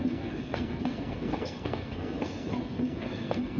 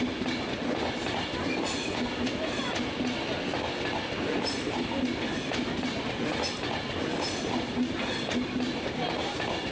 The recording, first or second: second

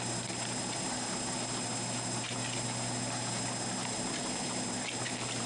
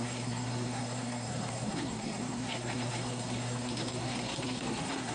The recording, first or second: first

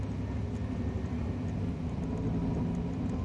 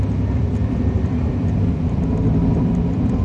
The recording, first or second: first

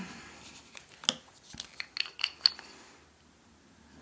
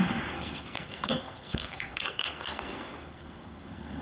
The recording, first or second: first